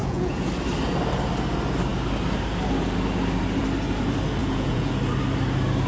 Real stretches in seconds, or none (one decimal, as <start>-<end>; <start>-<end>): 0.5-4.4; 4.9-5.9